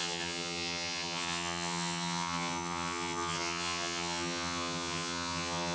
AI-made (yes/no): yes